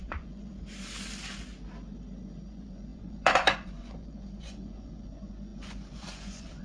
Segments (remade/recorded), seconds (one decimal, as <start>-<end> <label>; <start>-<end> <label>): 0.0-0.5 remade; 0.5-2.5 recorded; 2.5-6.6 remade